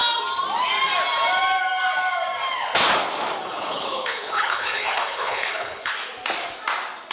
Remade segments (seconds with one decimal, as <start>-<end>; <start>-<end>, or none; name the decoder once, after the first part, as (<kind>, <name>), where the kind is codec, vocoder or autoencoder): 3.4-5.9 (codec, HILCodec)